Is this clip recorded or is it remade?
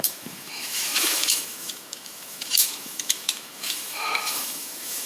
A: remade